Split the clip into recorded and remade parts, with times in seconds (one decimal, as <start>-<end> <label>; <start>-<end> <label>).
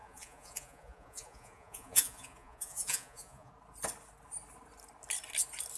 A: 0.0-3.5 remade; 3.5-5.8 recorded